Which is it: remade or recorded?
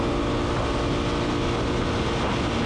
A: recorded